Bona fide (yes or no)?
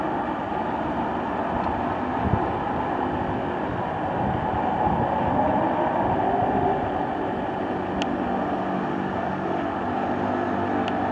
yes